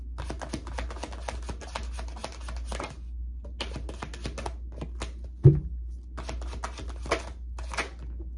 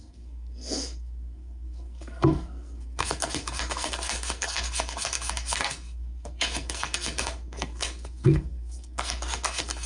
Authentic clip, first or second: first